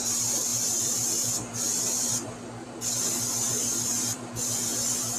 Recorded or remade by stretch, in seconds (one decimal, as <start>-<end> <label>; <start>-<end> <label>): 0.0-5.2 remade